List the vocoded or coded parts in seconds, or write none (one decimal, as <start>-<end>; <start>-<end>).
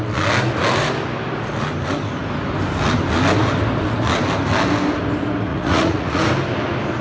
5.5-6.2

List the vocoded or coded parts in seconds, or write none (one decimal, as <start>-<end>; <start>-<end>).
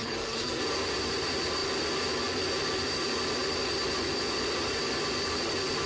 0.0-0.6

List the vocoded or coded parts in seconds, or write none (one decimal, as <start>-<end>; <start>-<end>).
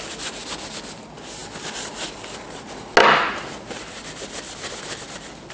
none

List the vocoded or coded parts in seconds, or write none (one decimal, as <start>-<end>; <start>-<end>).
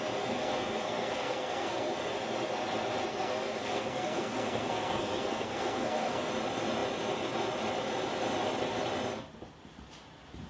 0.4-2.1; 3.1-6.3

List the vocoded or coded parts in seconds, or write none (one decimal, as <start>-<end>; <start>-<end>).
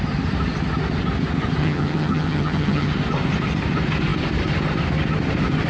1.6-2.9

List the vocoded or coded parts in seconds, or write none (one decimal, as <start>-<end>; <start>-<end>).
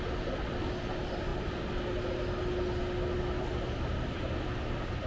none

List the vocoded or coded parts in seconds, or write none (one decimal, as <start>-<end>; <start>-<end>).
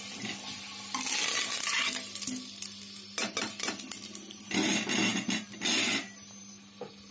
none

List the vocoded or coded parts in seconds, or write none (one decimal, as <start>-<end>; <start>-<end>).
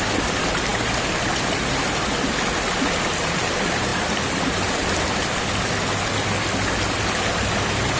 3.9-5.4